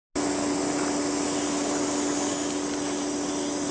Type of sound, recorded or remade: recorded